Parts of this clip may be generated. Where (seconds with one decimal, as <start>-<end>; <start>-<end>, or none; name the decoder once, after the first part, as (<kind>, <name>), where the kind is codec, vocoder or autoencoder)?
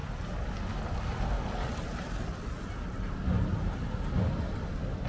none